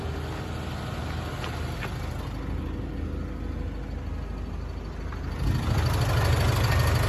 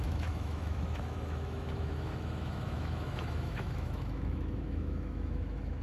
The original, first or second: first